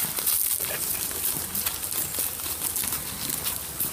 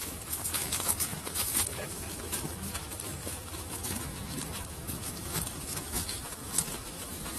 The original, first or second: first